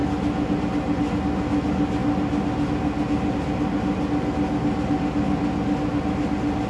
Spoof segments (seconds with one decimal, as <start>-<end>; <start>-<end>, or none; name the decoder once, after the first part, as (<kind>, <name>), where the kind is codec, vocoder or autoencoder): none